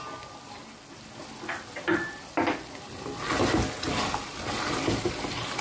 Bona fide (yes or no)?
yes